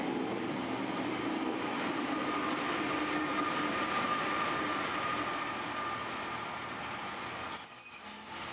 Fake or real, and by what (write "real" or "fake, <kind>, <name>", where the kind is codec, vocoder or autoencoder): real